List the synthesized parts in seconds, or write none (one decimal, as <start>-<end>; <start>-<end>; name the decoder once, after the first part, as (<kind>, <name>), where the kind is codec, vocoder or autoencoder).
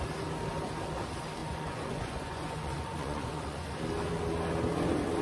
1.4-3.8 (vocoder, Vocos)